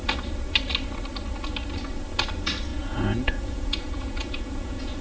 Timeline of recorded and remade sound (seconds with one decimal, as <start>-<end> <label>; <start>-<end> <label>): 0.0-2.7 recorded; 2.7-5.0 remade